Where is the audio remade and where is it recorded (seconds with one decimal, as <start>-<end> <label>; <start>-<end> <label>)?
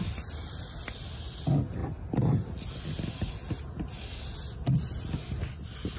0.0-6.0 recorded